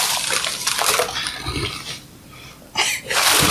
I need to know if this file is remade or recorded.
remade